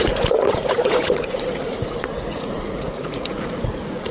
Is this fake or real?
fake